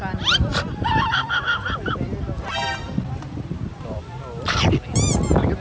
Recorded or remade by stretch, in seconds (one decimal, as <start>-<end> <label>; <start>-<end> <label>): 0.0-0.5 remade; 0.5-1.1 recorded; 1.1-5.6 remade